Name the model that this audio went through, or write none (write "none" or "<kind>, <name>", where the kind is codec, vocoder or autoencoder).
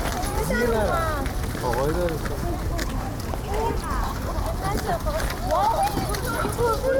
none